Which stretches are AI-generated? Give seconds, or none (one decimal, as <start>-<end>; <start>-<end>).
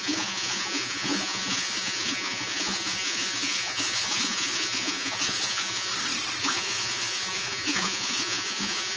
0.0-5.9; 6.4-9.0